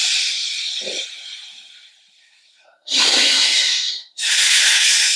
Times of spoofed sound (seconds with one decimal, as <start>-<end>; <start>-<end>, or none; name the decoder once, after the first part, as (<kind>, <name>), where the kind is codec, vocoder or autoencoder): 2.2-5.2 (codec, SNAC)

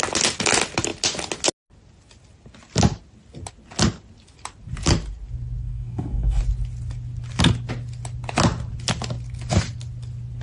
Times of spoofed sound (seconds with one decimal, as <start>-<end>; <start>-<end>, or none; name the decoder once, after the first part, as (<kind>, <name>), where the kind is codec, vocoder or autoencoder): 5.6-6.4 (codec, SNAC)

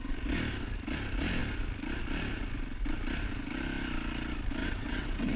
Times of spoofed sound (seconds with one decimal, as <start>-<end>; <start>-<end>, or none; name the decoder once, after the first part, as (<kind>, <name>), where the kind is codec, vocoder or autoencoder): 4.6-5.4 (vocoder, WaveNeXt)

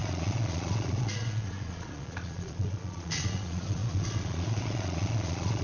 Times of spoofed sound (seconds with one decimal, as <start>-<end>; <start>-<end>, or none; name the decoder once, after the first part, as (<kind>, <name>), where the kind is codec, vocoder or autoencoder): 0.0-5.6 (vocoder, Vocos)

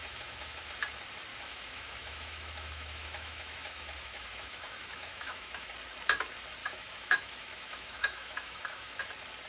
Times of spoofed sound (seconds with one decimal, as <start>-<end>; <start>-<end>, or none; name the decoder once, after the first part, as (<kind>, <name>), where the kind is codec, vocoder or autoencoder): 0.0-0.7 (autoencoder, DAC-VAE); 1.3-5.7; 6.6-9.0